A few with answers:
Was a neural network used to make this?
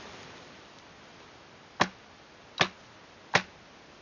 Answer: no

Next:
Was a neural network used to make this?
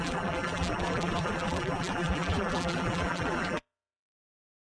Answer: yes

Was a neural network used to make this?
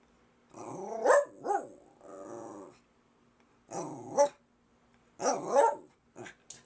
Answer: no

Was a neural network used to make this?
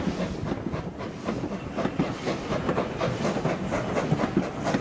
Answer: no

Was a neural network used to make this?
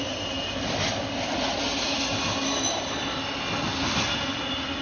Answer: no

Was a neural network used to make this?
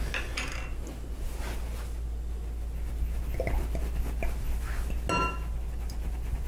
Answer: no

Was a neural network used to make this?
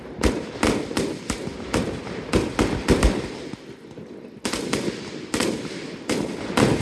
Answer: no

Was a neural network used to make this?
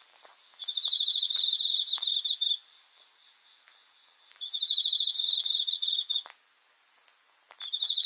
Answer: yes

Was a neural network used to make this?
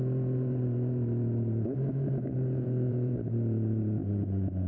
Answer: yes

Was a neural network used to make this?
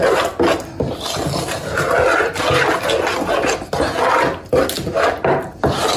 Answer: no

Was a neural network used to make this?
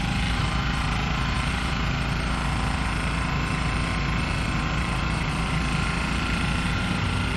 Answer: yes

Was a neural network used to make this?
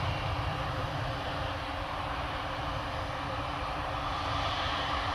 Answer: yes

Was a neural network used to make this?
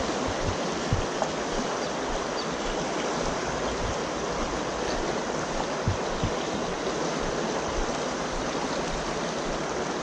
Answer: no